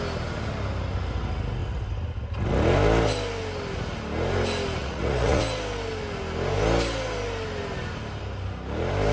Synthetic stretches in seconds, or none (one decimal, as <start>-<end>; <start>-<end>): 4.8-5.4